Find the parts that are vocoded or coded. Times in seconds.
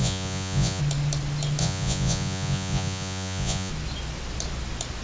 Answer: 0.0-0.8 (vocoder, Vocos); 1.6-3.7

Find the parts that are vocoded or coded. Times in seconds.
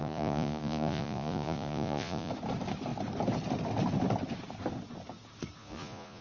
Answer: 0.0-2.3 (vocoder, Vocos); 5.6-6.2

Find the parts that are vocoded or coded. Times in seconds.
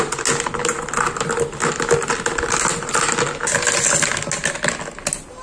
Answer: none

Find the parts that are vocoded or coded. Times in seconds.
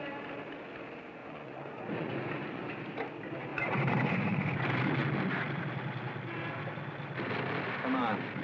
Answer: 1.2-2.7 (vocoder, Vocos); 3.5-4.6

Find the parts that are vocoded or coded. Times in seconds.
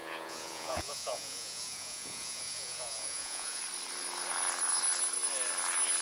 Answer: 0.0-3.6 (vocoder, Vocos)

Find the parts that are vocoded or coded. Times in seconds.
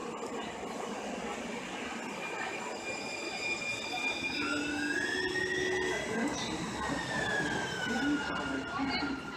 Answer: none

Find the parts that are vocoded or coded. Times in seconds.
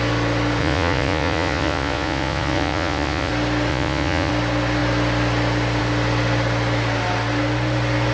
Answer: 0.6-3.3 (vocoder, Vocos); 3.7-4.3